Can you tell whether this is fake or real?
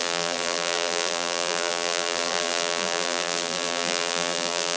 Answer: fake